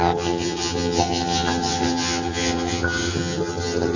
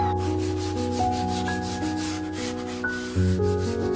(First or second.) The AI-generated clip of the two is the first